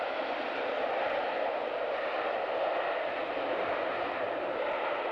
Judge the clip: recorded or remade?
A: recorded